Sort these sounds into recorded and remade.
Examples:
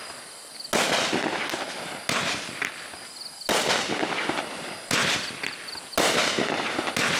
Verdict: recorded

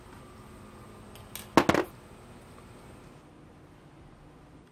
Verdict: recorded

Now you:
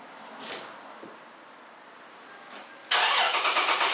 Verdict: recorded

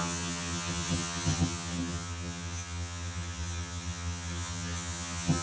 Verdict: remade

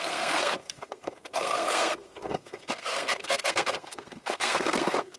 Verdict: remade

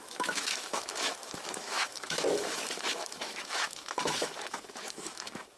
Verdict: remade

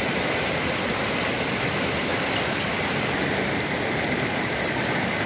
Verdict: recorded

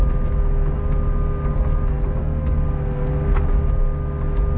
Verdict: recorded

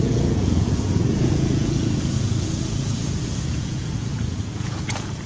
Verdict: remade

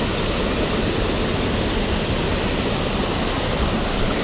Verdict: recorded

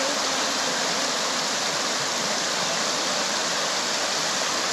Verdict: recorded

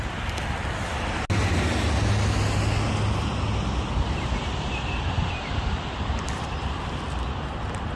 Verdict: recorded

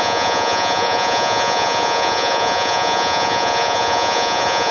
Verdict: remade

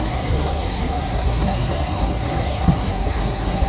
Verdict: remade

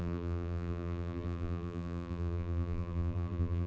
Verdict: remade